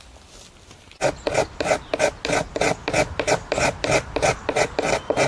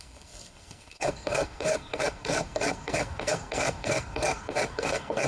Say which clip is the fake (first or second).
second